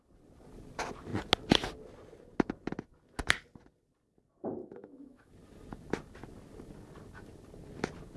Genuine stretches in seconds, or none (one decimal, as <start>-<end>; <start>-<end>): 0.0-4.6; 5.3-8.2